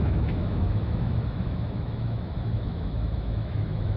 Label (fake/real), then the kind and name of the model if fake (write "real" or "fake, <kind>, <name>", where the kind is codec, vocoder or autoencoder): fake, autoencoder, DAC-VAE